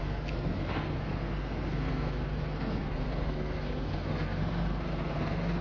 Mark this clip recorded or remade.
remade